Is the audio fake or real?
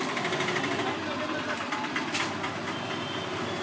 real